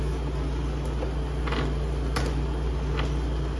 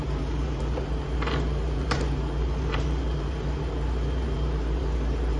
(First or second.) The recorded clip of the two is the first